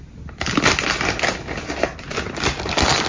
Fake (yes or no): no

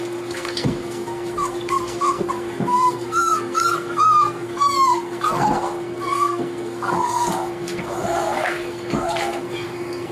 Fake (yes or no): yes